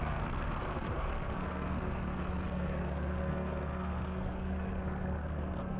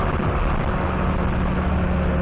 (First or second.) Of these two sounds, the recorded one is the second